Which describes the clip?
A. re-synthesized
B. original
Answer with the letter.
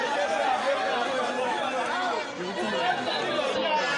B